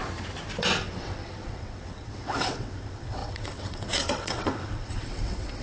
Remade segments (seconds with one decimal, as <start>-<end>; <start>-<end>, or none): 0.8-5.6